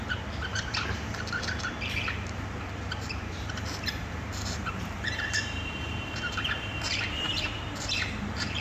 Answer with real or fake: fake